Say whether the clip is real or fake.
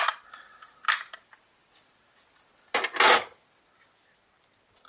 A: real